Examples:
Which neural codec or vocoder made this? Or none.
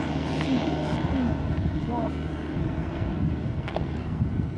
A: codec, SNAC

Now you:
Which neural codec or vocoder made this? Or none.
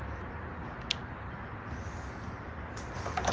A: none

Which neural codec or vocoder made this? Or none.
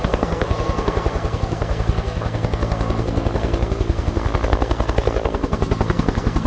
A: codec, SNAC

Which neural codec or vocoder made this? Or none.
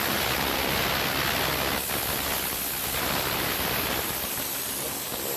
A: none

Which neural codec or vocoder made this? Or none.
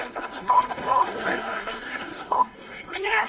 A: codec, SNAC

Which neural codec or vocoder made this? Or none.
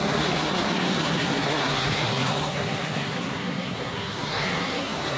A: codec, SNAC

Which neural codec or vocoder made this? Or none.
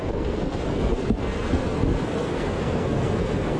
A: codec, SNAC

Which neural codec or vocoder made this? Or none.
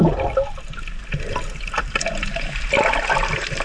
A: none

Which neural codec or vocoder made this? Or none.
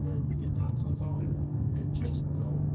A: codec, SNAC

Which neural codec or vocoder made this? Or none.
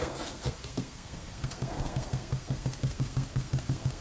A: codec, SNAC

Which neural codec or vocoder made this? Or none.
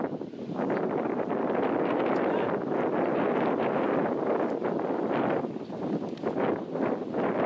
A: none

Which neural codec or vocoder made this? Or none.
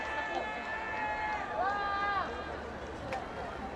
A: none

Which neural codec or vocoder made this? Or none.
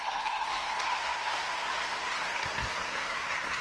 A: codec, SNAC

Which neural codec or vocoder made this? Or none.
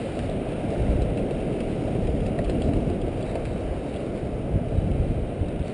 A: none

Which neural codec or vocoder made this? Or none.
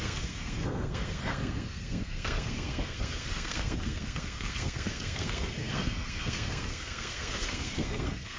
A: codec, SNAC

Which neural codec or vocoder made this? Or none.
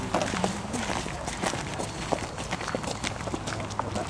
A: none